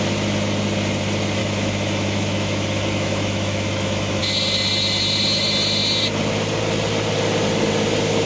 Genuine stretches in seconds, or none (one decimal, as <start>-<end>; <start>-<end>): 0.0-1.4; 4.2-8.3